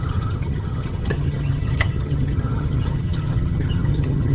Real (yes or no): no